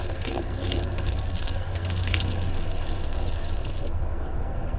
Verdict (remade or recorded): remade